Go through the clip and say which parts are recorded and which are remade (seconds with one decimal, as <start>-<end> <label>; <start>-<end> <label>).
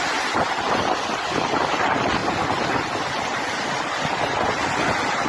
0.0-5.3 recorded